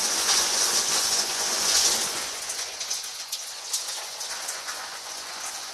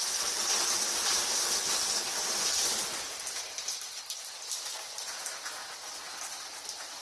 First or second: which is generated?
first